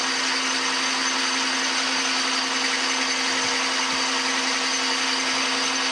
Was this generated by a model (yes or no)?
no